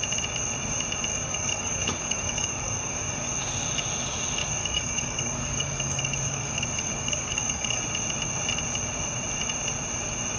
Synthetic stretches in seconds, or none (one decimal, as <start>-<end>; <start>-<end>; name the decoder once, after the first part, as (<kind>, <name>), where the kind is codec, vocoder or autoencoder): 1.1-3.3 (codec, DAC); 4.6-7.8